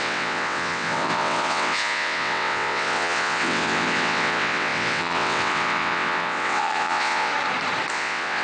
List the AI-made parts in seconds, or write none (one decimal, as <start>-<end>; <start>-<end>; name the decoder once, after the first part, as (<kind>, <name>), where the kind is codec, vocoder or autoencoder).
0.0-7.3 (vocoder, WaveNeXt); 7.9-8.4